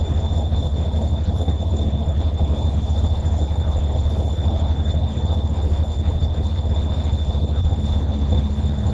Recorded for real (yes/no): no